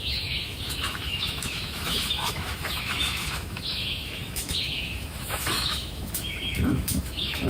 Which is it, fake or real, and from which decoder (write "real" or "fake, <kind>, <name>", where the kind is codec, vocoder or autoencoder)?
fake, autoencoder, DAC-VAE